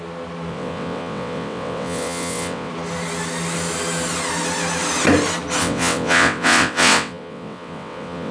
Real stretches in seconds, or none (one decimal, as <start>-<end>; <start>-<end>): 0.0-0.5; 2.7-5.6